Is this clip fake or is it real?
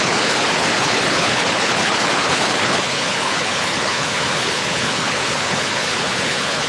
fake